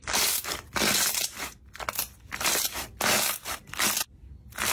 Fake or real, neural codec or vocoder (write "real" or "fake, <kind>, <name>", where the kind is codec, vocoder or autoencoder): real